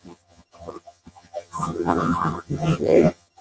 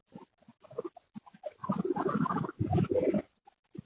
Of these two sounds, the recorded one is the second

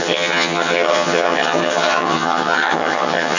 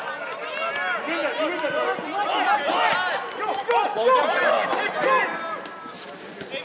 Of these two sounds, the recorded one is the second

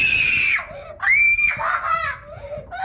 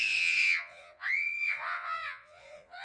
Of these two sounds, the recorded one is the first